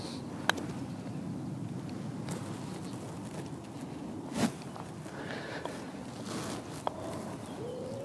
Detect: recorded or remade recorded